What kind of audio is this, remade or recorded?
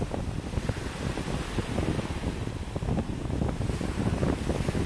recorded